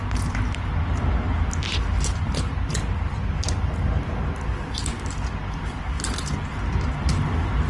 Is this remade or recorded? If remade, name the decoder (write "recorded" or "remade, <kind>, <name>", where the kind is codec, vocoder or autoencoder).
recorded